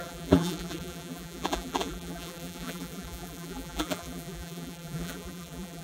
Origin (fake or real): fake